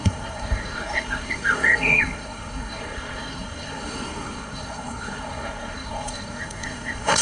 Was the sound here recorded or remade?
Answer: remade